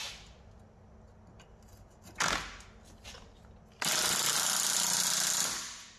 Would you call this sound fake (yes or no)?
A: no